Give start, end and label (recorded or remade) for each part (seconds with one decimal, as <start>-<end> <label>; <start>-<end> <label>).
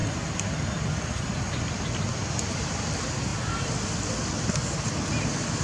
0.0-5.6 recorded